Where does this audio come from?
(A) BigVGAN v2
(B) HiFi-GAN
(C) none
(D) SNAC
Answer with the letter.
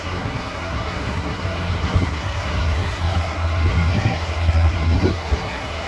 D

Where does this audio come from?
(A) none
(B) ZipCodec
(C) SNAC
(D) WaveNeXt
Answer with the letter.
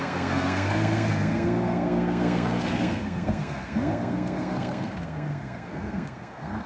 C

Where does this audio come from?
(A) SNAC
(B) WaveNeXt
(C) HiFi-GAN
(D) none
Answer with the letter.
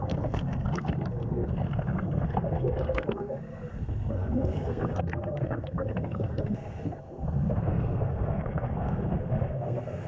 A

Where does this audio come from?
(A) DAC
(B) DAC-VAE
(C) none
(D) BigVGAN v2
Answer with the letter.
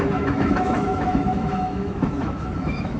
B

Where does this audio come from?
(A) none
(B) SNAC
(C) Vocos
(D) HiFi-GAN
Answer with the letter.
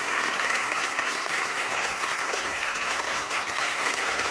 B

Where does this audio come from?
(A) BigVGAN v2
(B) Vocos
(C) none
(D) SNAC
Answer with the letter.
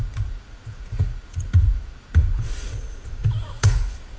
B